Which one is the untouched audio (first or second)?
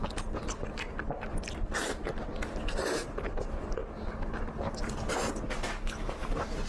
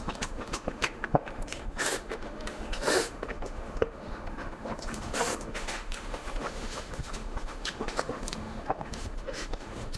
first